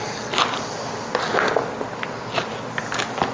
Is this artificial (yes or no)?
no